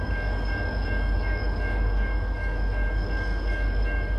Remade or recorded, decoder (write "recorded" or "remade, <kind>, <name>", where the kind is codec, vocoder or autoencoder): remade, codec, DAC